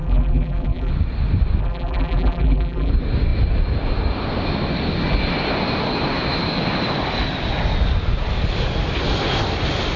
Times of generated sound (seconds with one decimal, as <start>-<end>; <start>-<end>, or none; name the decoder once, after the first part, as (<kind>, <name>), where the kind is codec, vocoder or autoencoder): 0.0-0.9 (vocoder, BigVGAN v2); 1.6-2.9